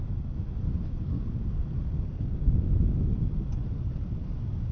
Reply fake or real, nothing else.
real